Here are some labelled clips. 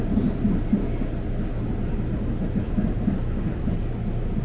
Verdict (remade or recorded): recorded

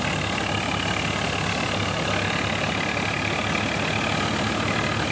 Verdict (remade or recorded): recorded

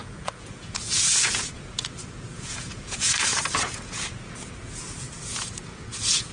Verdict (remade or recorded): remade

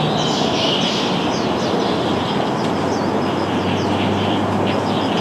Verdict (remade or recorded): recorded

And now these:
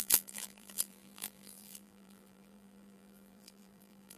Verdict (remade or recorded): remade